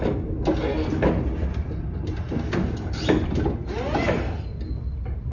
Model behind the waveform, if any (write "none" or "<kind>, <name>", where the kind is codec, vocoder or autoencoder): none